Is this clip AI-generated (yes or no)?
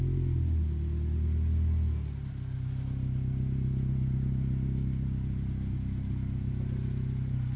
no